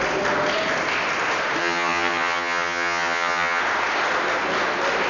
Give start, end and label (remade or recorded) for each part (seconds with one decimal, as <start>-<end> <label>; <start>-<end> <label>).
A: 0.0-1.6 recorded; 1.6-3.6 remade; 3.6-5.1 recorded